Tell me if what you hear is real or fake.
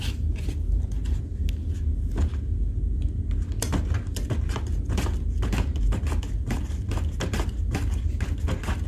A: real